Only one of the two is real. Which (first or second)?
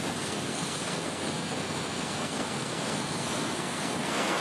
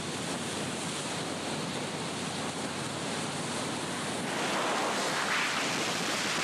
second